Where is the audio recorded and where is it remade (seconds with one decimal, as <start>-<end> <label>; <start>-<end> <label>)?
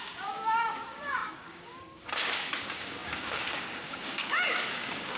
0.0-5.2 remade